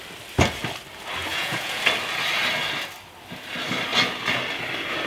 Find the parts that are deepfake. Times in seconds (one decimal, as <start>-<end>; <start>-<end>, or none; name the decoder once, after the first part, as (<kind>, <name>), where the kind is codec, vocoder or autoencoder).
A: 1.2-1.8 (vocoder, Vocos)